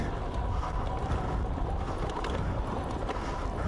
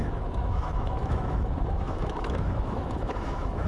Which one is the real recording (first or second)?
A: first